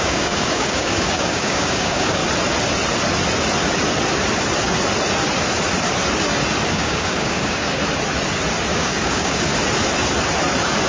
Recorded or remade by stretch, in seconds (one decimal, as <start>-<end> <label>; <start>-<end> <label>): 0.0-2.2 remade; 2.2-6.7 recorded; 6.7-7.8 remade; 7.8-8.7 recorded; 8.7-9.5 remade; 9.5-10.9 recorded